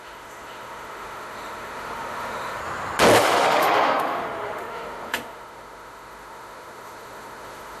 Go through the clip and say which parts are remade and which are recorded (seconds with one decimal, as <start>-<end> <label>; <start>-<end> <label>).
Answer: 0.0-2.6 remade; 2.6-3.2 recorded; 3.2-7.8 remade